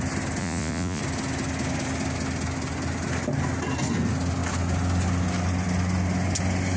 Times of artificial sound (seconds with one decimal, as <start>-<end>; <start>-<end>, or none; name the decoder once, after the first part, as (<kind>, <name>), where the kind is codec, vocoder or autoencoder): 0.4-1.0 (vocoder, Vocos)